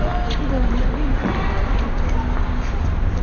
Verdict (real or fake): real